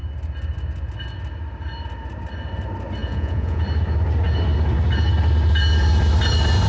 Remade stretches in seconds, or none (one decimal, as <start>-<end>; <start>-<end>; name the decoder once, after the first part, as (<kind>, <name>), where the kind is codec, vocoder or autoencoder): 3.0-3.6 (vocoder, Vocos)